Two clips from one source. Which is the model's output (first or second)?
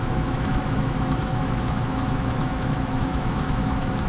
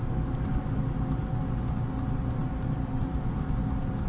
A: first